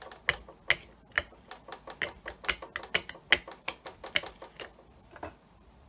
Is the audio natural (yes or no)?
yes